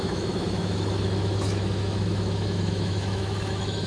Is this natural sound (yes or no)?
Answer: no